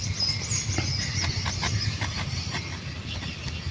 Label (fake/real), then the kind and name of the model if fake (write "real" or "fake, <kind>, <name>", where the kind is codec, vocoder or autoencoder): real